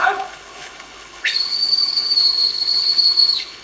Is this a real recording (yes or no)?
no